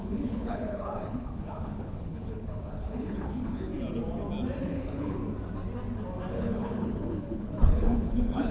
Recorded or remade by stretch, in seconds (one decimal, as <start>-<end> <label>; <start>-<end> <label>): 0.0-3.7 remade; 3.7-4.6 recorded; 4.6-5.2 remade; 5.2-6.3 recorded; 6.3-8.5 remade